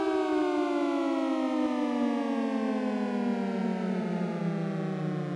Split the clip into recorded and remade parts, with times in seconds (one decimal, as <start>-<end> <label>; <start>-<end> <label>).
0.0-3.6 recorded; 3.6-4.4 remade; 4.4-5.4 recorded